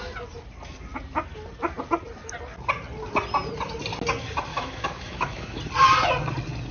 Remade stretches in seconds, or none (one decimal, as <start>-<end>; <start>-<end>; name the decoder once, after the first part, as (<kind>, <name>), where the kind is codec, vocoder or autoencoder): 4.5-5.6 (autoencoder, DAC-VAE)